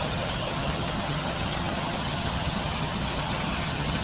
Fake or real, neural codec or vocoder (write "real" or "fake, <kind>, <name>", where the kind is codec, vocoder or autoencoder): fake, vocoder, HiFi-GAN